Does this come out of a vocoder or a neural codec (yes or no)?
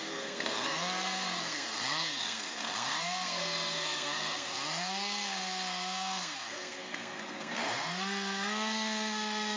yes